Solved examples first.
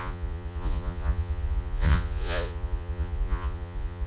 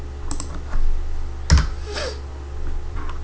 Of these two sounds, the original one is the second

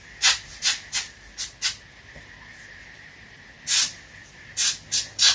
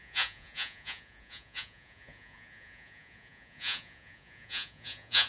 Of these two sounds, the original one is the first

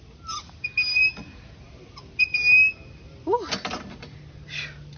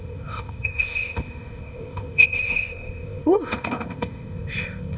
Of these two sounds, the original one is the first